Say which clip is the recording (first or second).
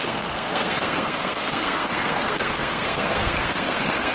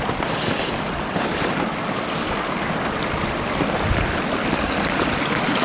second